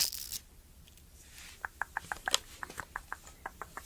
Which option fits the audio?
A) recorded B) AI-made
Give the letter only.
A